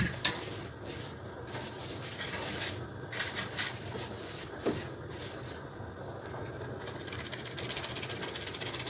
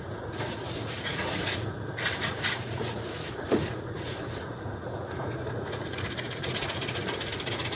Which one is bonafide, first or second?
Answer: first